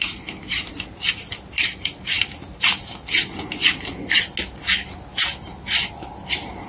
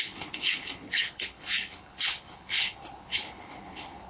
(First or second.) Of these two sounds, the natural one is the first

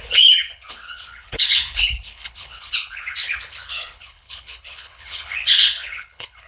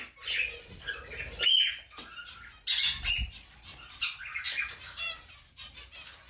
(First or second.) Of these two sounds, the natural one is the second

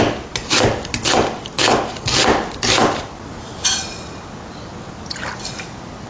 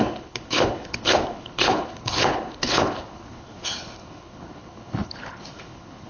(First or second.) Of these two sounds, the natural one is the first